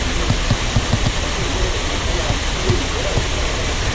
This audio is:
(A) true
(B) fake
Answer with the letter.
A